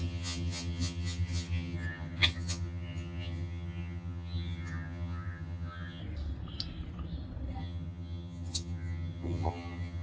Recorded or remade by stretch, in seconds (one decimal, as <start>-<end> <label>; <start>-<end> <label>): 0.0-6.0 remade; 6.0-7.6 recorded; 7.6-10.0 remade